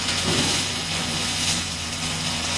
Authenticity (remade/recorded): remade